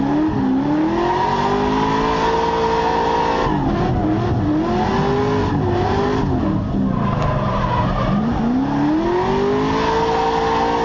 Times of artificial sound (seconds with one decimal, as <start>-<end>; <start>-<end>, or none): 5.4-8.4